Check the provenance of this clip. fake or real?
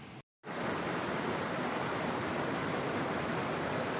real